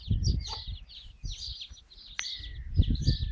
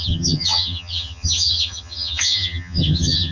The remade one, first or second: second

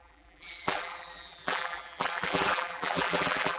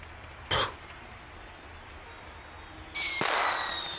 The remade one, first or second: first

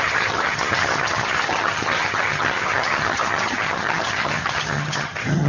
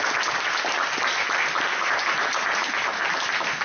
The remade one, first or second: first